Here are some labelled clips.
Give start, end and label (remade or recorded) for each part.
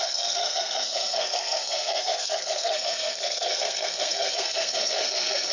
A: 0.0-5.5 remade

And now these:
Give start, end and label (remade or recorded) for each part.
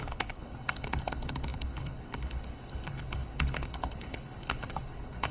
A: 0.0-5.3 remade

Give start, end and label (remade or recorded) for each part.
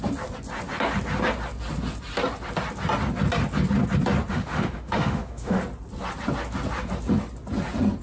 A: 0.0-4.3 recorded; 4.3-5.6 remade; 5.6-8.0 recorded